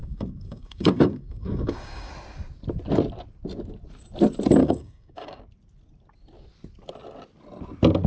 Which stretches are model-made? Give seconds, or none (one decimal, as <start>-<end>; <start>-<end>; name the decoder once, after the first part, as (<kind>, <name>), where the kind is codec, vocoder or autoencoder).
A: 0.0-2.1 (codec, DAC); 4.6-5.4